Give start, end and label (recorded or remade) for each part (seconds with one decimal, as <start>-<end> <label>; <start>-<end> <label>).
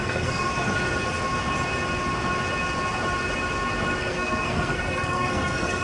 0.0-0.5 remade; 0.5-4.0 recorded; 4.0-5.8 remade